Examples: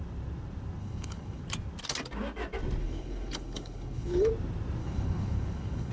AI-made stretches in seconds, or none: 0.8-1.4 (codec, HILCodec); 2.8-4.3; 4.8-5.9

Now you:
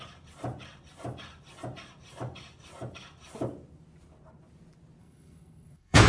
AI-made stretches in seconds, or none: 5.0-6.1 (codec, SNAC)

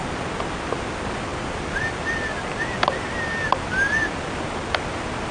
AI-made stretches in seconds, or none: none

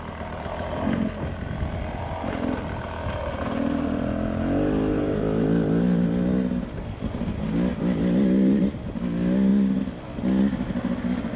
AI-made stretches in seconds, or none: none

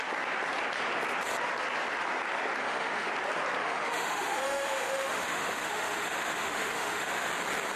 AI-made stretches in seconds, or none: 2.6-3.1 (autoencoder, DAC-VAE); 3.6-7.3

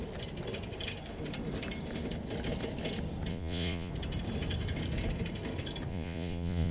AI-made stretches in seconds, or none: 3.3-3.9 (vocoder, Vocos); 5.9-6.7

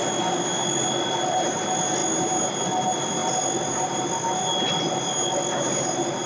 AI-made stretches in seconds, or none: none

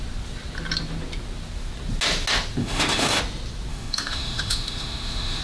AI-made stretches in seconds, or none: 2.6-3.2 (autoencoder, DAC-VAE); 3.7-5.4